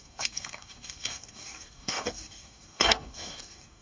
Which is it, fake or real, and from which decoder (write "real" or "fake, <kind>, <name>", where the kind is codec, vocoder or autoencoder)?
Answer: fake, codec, DAC